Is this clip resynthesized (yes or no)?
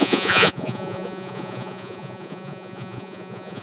yes